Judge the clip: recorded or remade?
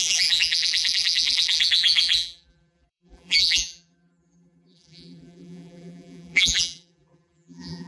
remade